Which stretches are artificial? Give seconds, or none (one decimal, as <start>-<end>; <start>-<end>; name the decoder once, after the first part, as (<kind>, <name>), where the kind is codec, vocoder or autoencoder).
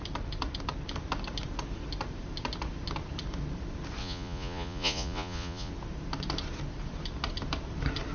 4.0-5.7 (vocoder, Vocos)